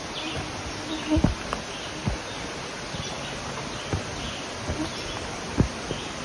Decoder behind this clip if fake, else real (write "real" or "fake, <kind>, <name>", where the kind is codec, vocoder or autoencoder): real